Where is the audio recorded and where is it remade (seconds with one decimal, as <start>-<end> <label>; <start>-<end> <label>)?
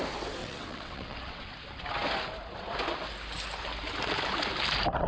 0.0-0.4 recorded; 0.4-1.5 remade; 1.5-5.1 recorded